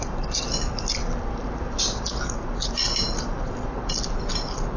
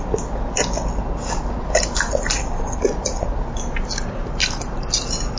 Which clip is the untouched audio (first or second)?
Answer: second